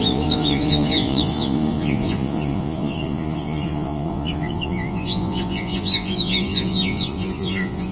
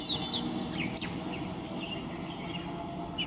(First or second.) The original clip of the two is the second